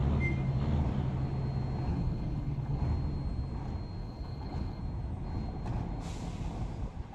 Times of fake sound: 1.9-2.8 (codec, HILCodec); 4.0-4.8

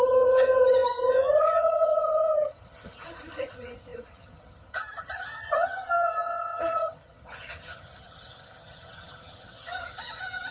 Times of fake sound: 0.0-10.5 (vocoder, HiFi-GAN)

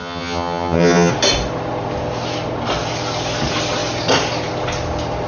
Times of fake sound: 0.0-1.1 (vocoder, HiFi-GAN)